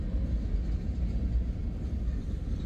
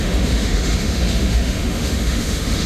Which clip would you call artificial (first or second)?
second